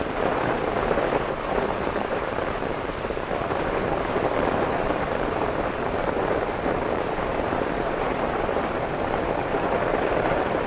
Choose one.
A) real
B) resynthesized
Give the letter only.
B